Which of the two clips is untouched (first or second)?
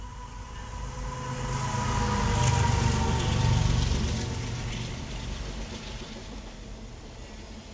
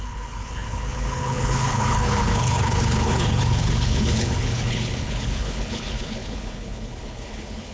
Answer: first